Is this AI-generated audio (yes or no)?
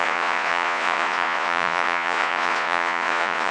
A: yes